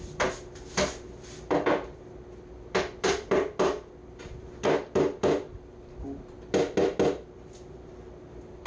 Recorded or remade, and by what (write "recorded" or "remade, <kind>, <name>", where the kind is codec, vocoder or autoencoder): recorded